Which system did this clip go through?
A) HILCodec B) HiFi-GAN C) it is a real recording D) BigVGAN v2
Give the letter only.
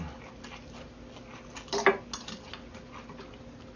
C